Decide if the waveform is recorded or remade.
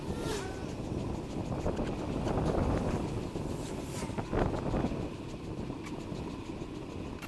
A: recorded